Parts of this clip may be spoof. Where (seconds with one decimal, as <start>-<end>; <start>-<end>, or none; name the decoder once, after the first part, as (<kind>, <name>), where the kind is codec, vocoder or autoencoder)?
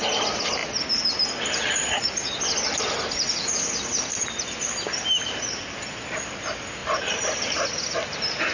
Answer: none